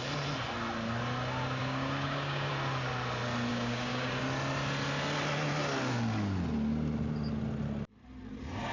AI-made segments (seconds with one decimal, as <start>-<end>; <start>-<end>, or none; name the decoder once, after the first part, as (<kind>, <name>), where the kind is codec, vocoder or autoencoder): 1.6-2.5 (codec, DAC); 3.5-4.1